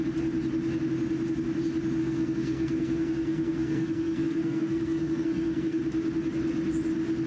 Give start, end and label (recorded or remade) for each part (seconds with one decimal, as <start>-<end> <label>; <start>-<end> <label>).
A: 0.0-2.0 recorded; 2.0-5.8 remade; 5.8-7.3 recorded